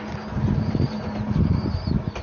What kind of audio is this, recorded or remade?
recorded